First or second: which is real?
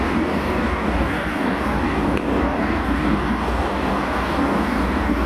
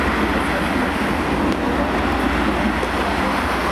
second